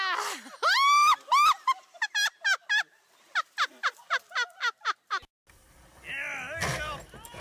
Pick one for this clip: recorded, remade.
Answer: recorded